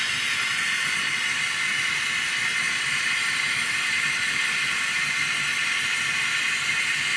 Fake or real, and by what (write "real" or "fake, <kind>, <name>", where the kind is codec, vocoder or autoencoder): real